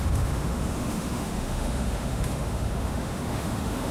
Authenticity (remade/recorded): remade